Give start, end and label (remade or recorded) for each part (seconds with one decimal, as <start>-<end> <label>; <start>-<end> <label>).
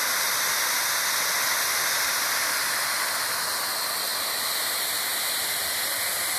0.0-6.4 recorded